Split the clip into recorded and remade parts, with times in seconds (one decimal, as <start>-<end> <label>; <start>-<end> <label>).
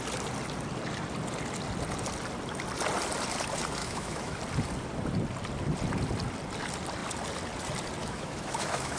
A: 0.0-3.8 recorded; 3.8-4.4 remade; 4.4-8.0 recorded; 8.0-9.0 remade